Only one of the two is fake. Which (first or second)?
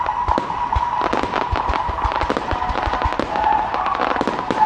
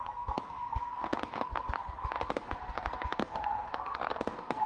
second